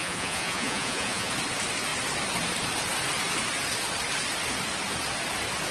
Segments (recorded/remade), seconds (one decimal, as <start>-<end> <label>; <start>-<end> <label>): 0.0-1.3 remade; 1.3-5.7 recorded